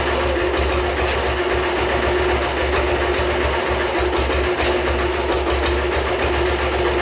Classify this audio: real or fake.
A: real